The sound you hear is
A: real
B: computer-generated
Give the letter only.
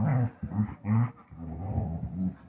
A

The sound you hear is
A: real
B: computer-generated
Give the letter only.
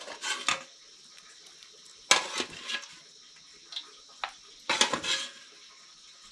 A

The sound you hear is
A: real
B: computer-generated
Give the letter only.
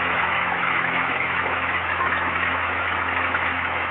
B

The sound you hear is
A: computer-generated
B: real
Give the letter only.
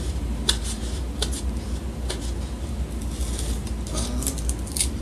B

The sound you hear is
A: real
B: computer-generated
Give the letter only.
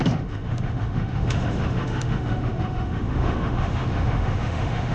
B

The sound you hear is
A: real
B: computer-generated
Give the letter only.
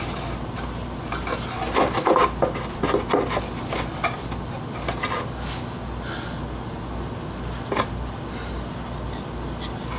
A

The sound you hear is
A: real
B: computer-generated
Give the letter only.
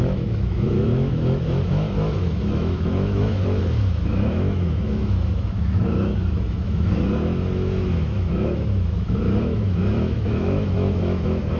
B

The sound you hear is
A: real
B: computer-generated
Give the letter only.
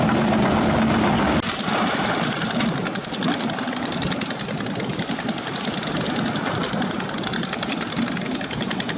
A